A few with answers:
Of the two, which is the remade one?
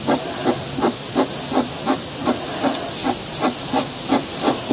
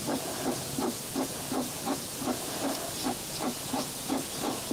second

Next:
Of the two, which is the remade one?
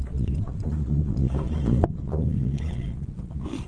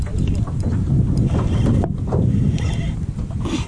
first